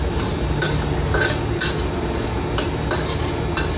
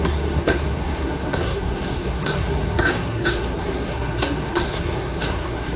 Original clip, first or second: first